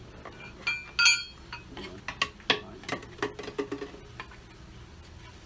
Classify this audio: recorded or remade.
recorded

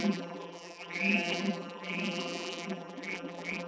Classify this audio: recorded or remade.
remade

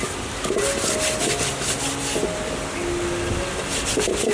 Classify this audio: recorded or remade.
recorded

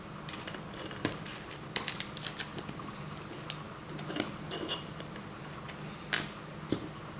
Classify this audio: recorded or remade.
recorded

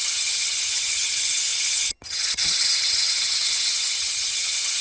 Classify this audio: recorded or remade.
remade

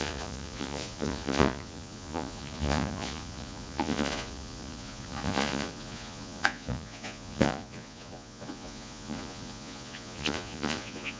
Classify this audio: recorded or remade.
remade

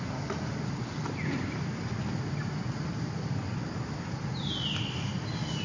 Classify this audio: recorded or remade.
recorded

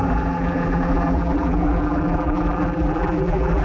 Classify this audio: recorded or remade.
remade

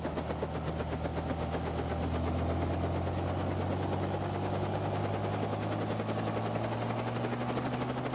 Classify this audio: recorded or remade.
recorded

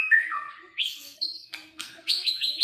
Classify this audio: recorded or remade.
remade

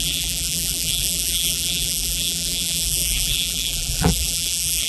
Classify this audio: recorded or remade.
remade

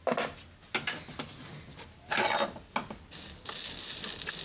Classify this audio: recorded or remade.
recorded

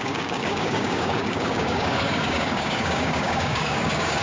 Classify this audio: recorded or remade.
remade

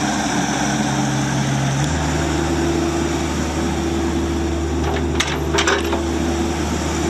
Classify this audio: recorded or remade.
recorded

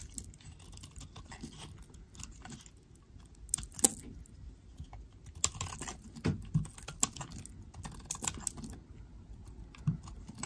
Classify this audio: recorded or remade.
recorded